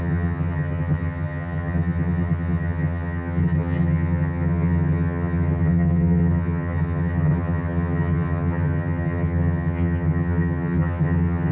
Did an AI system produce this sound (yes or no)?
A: yes